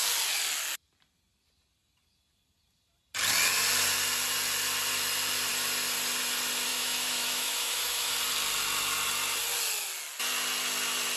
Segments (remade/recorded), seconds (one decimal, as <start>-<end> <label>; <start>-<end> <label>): 0.0-6.7 recorded; 6.7-8.1 remade; 8.1-11.2 recorded